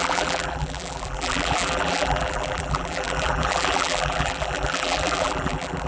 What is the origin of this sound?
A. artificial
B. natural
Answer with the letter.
A